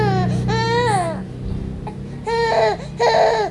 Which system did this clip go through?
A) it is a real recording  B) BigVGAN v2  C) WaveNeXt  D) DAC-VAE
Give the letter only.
A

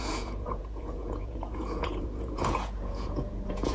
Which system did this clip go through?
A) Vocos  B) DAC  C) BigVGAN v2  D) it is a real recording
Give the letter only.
A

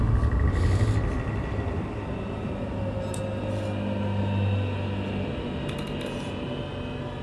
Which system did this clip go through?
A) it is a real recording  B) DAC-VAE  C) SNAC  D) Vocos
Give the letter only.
A